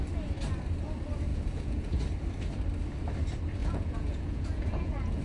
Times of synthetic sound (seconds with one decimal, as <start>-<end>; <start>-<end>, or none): 1.3-2.0; 3.6-5.2